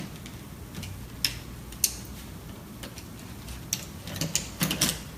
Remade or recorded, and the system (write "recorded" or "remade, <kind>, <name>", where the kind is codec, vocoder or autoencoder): recorded